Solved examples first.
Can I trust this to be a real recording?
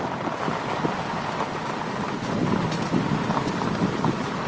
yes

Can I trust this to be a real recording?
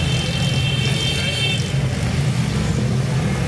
yes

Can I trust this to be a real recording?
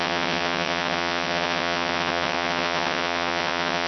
no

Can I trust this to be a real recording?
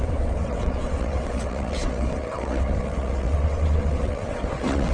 no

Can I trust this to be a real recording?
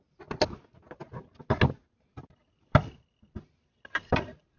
yes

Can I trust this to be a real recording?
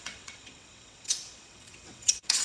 no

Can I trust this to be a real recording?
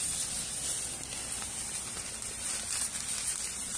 yes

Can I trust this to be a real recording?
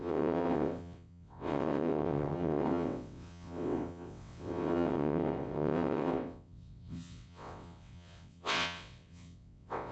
no